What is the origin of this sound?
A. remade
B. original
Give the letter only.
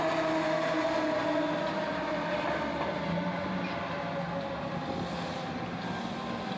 B